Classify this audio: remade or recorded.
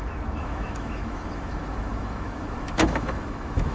remade